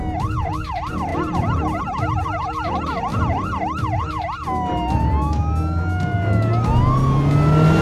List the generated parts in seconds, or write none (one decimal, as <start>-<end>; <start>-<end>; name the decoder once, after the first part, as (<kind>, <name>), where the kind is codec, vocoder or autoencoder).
none